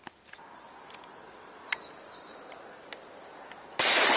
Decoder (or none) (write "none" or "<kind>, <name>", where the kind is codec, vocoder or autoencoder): none